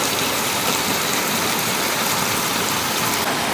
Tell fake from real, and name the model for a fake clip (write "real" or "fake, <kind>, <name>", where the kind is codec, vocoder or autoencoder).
real